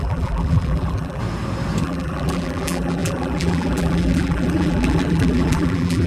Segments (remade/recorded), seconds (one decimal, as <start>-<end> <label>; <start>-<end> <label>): 0.0-1.2 remade; 1.2-1.8 recorded; 1.8-6.1 remade